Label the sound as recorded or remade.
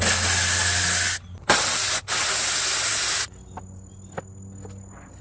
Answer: recorded